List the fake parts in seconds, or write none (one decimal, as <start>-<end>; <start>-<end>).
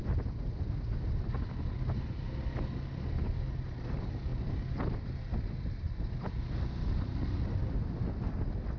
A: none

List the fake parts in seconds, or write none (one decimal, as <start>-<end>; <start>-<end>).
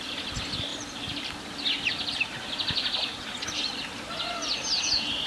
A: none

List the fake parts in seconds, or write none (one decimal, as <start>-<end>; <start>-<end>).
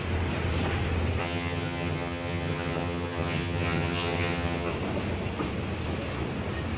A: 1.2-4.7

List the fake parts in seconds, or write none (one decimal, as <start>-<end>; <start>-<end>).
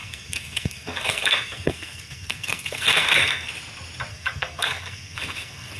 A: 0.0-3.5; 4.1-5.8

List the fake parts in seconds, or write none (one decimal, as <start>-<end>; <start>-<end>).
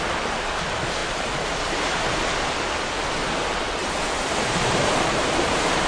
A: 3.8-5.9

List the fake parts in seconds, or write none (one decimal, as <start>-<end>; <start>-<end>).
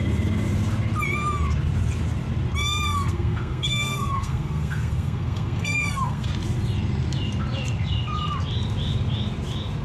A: 2.6-6.3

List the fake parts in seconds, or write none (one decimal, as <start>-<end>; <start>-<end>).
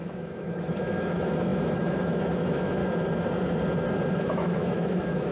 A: 0.0-2.8; 4.2-5.3